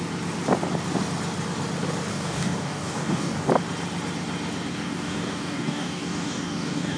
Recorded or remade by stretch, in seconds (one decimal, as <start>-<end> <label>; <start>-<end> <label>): 0.0-2.1 recorded; 2.1-3.5 remade; 3.5-4.7 recorded; 4.7-7.0 remade